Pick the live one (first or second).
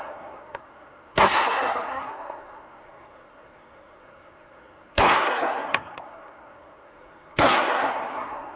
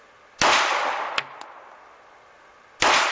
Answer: second